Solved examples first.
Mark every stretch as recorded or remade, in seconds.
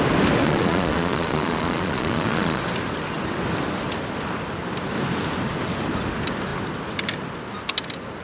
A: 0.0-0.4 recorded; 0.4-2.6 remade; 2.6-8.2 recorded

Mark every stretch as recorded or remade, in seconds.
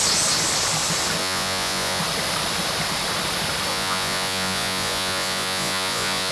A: 0.0-1.2 recorded; 1.2-2.0 remade; 2.0-3.7 recorded; 3.7-6.3 remade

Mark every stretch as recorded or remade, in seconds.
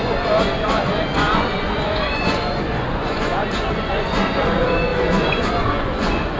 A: 0.0-6.4 remade